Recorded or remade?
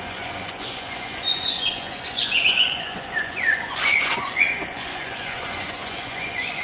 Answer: remade